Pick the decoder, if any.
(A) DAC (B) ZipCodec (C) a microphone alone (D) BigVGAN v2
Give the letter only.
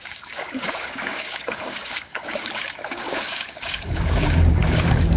A